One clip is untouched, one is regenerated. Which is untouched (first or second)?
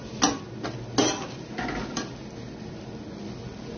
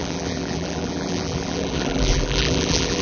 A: first